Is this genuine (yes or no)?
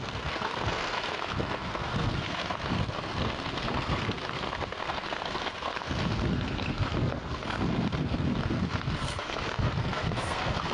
no